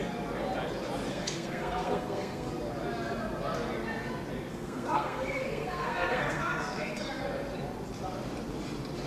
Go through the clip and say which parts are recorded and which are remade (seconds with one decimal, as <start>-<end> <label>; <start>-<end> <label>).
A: 0.0-1.1 recorded; 1.1-2.5 remade; 2.5-4.5 recorded; 4.5-7.2 remade; 7.2-9.1 recorded